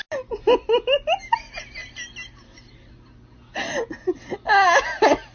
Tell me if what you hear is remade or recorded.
recorded